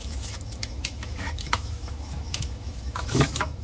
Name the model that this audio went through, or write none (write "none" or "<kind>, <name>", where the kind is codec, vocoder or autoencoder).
autoencoder, DAC-VAE